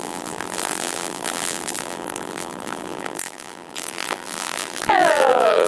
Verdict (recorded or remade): remade